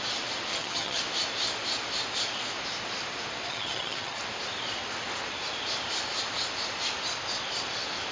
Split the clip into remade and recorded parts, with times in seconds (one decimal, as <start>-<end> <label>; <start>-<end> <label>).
0.0-0.5 recorded; 0.5-1.0 remade; 1.0-3.5 recorded; 3.5-4.2 remade; 4.2-8.1 recorded